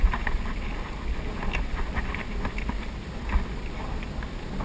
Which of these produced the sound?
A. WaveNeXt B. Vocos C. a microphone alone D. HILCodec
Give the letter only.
C